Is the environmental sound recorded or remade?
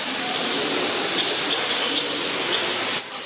remade